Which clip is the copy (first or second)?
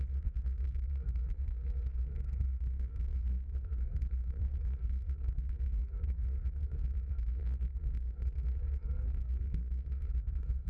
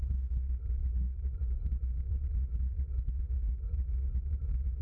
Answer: first